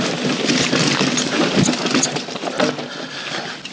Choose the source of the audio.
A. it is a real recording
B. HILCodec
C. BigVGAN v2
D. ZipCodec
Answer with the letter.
A